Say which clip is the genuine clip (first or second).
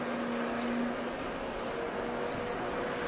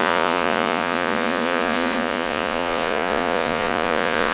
first